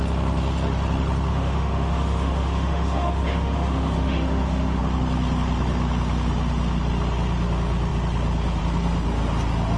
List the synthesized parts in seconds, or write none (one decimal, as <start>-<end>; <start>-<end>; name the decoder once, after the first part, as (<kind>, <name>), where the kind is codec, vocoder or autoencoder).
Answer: 1.3-4.8 (autoencoder, DAC-VAE)